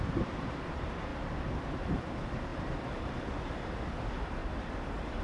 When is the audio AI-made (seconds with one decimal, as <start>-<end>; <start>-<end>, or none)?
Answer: 1.1-2.1; 2.5-3.3; 4.4-5.2

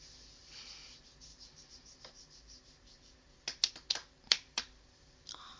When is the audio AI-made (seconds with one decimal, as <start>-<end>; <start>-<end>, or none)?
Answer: 1.3-3.3; 4.0-4.6

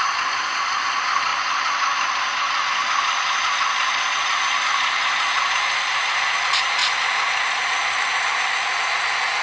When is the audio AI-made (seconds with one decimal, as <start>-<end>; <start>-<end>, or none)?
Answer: none

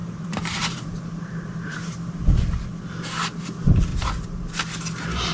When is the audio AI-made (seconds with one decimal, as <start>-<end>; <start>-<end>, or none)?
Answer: 0.0-1.0; 3.9-4.5

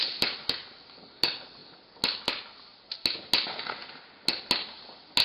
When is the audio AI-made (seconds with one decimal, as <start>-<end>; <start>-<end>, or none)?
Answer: none

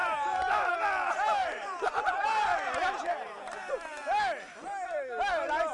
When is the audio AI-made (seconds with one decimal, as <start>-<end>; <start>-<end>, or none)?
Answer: 0.0-0.7; 1.4-3.7